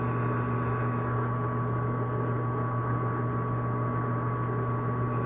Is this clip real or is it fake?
real